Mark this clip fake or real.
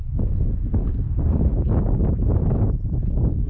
real